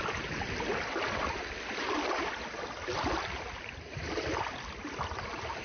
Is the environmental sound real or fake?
real